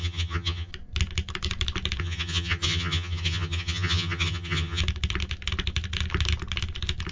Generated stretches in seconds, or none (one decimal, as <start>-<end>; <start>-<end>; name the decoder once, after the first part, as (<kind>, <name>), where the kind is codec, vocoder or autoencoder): 0.0-0.7 (vocoder, HiFi-GAN); 2.0-4.8